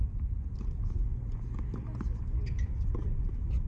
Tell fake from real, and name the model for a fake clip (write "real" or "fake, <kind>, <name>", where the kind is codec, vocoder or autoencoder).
real